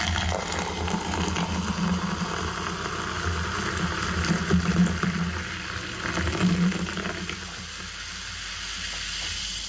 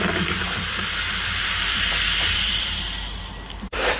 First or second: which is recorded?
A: first